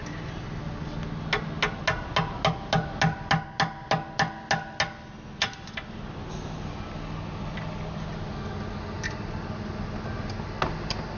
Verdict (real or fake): real